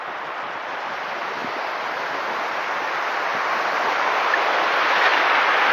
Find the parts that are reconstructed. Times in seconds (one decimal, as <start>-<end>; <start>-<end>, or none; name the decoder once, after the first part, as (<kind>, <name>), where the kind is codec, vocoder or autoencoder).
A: none